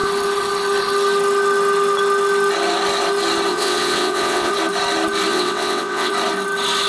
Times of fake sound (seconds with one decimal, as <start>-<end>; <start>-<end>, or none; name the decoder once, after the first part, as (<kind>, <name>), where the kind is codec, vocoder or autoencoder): 3.5-4.5 (vocoder, WaveNeXt); 5.3-6.1